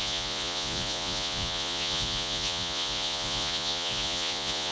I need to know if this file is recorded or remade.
remade